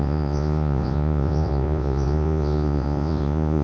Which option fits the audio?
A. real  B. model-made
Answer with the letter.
B